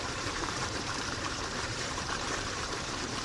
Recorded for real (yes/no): no